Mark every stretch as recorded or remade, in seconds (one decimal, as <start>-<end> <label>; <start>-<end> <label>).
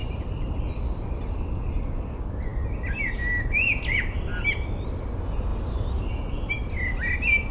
0.0-0.5 remade; 0.5-7.5 recorded